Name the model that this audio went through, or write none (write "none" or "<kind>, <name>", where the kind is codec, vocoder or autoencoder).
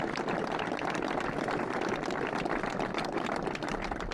vocoder, BigVGAN v2